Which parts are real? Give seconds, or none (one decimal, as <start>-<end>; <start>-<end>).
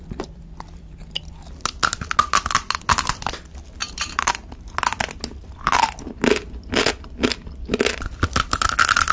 0.0-3.8; 4.3-9.1